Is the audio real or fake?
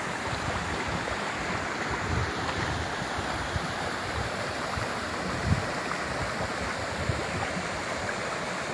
real